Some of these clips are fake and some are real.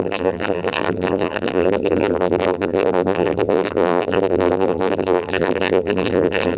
fake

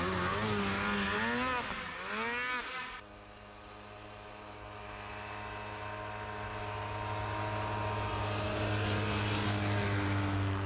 real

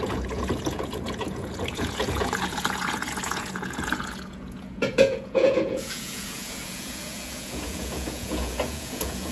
fake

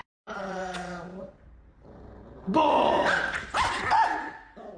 fake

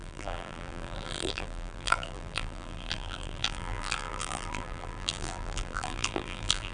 fake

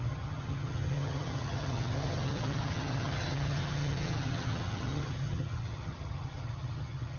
fake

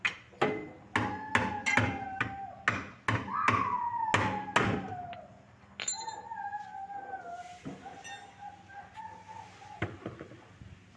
real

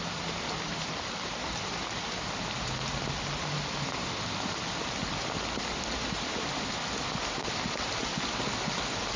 real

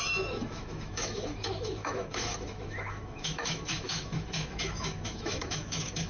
fake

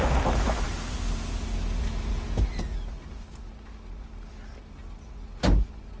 real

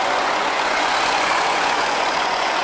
fake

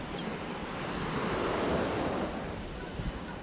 real